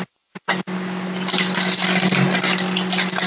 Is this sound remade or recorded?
recorded